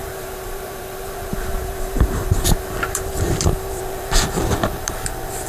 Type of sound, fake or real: fake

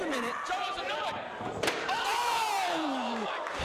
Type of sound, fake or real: fake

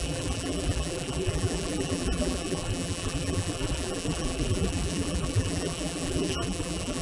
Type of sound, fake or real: fake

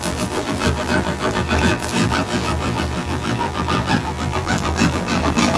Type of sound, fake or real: fake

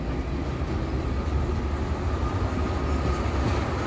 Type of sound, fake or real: real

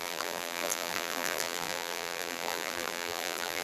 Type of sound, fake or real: fake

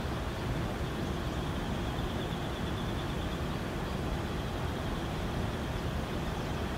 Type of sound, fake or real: real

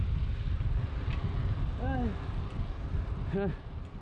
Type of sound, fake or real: real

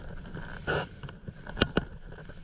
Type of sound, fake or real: real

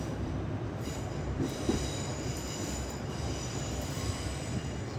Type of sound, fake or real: fake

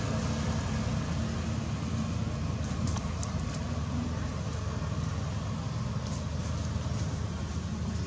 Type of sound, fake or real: real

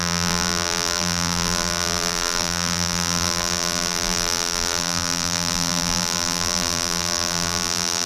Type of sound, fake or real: fake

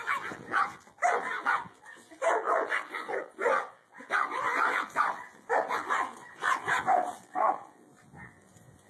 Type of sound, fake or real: fake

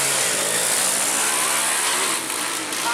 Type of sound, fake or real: real